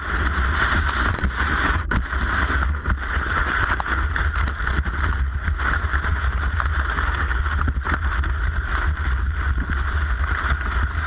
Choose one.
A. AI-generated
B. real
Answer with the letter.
B